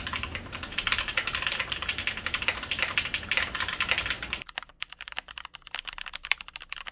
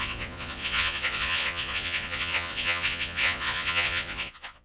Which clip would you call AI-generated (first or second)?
second